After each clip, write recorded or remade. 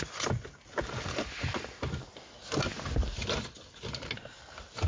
recorded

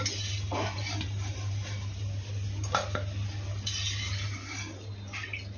recorded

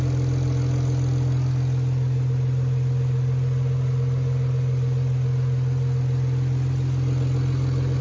recorded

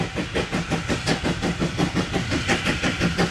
recorded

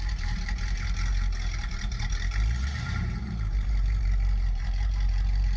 remade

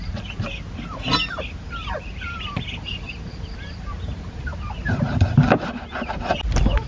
recorded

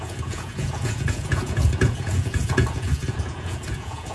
remade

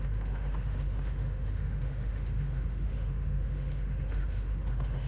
remade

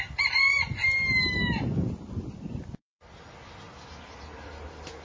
recorded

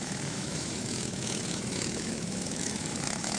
remade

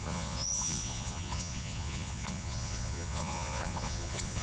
remade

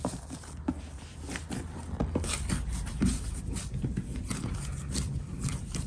recorded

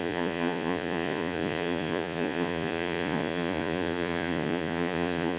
remade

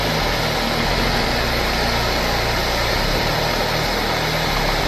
recorded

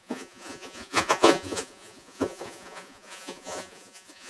remade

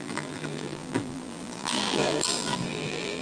remade